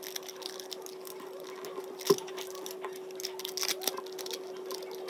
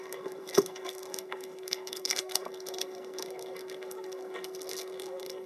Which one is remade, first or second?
second